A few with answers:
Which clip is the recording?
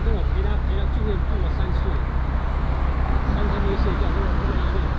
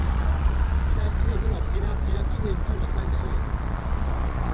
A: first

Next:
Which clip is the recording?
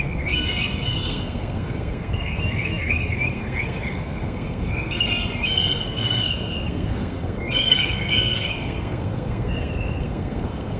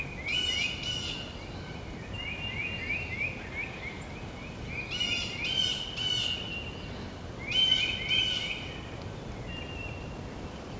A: second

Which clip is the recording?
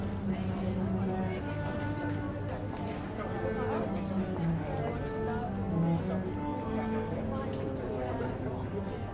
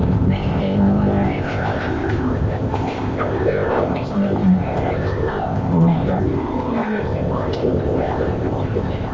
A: first